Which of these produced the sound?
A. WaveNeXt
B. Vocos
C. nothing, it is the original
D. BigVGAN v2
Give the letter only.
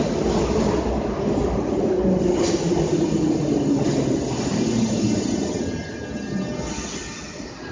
C